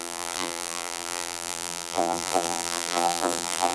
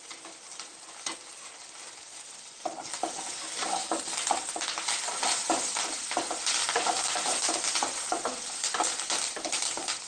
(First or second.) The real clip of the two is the second